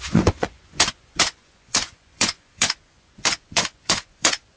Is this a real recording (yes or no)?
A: no